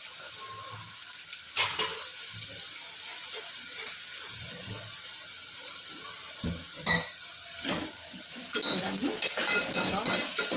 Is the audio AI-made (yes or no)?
no